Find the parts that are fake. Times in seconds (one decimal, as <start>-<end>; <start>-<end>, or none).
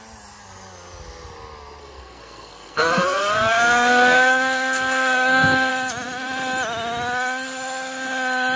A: 1.8-5.7